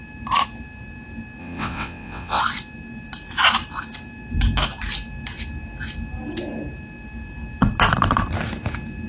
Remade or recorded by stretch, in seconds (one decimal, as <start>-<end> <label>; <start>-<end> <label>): 0.0-1.4 recorded; 1.4-2.4 remade; 2.4-9.1 recorded